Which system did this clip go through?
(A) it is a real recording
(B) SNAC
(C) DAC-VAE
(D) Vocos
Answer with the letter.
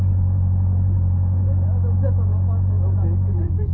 A